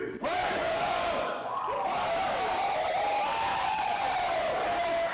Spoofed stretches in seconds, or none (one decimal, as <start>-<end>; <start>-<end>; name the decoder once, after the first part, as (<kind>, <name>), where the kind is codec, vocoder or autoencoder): 0.4-1.6 (vocoder, Vocos); 3.5-4.1